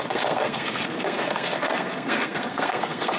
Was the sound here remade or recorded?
remade